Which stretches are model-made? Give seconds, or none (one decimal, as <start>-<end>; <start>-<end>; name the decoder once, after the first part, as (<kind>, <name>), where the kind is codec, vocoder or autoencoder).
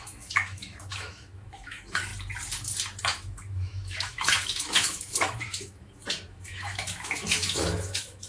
0.0-2.1 (autoencoder, DAC-VAE); 3.0-8.3